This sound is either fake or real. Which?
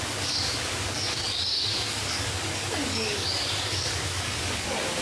fake